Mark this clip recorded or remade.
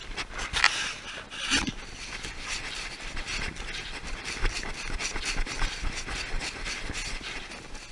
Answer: recorded